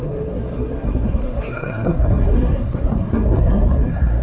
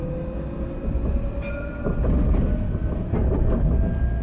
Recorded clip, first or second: second